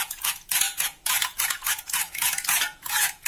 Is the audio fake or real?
fake